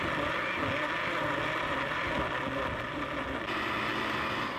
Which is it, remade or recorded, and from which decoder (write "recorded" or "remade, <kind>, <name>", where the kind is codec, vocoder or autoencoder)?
recorded